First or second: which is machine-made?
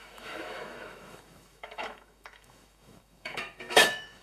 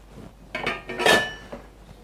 first